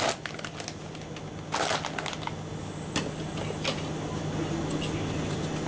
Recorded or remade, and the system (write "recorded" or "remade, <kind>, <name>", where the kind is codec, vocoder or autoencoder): recorded